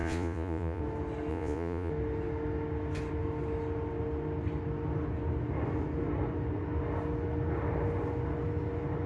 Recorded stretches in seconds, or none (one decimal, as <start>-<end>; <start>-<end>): 0.8-1.3; 1.9-9.1